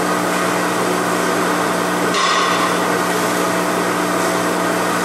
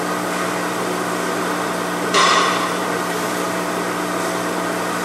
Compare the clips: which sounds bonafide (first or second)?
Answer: first